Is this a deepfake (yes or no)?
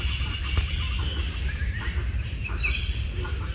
no